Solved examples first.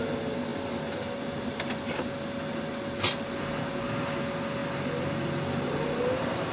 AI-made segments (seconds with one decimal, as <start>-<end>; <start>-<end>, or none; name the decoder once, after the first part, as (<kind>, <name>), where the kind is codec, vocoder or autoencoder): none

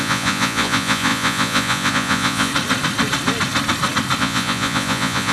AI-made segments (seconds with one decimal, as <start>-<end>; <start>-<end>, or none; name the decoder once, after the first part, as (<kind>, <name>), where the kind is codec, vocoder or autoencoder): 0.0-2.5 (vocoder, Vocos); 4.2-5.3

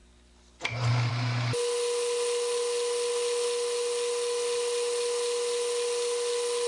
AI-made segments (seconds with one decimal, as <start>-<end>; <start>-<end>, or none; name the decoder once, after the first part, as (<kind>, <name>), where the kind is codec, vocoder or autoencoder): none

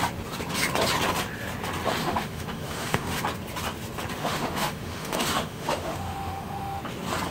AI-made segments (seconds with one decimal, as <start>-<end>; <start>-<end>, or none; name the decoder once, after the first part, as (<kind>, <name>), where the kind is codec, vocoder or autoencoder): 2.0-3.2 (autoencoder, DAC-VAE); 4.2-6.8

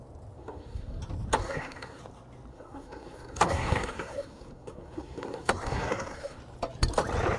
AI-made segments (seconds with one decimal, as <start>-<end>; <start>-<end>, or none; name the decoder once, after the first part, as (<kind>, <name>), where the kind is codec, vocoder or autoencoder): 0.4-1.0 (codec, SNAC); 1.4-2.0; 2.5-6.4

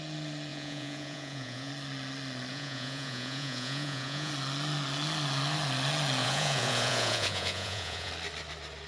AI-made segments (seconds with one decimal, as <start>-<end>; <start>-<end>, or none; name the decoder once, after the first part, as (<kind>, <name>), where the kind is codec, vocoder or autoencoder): 0.5-1.7 (vocoder, Vocos); 2.5-4.3; 6.2-8.1

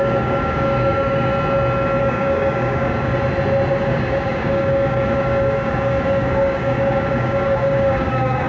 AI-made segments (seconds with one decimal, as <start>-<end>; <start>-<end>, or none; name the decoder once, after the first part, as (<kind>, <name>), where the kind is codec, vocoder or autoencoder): 0.0-1.3 (codec, DAC); 2.0-3.1; 3.7-8.5

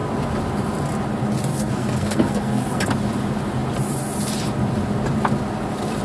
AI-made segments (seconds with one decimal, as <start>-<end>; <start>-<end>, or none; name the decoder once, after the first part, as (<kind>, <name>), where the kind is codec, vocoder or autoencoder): 1.5-2.8 (codec, SNAC)